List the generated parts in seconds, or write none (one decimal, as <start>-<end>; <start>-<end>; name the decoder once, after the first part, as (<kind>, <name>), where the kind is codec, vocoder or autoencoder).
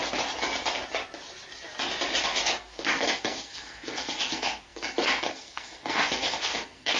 2.2-7.0 (codec, SNAC)